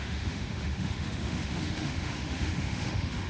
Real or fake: fake